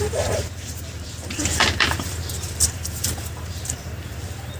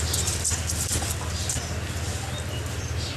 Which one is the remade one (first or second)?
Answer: first